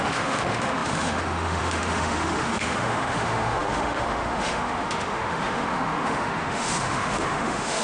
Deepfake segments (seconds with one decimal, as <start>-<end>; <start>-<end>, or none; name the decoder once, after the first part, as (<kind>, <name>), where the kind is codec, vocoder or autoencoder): 0.0-7.8 (autoencoder, DAC-VAE)